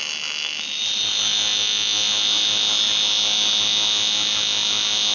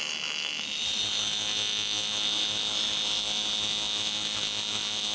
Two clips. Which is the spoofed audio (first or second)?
second